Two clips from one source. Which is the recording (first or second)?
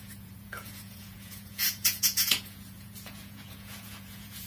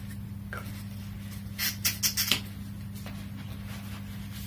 second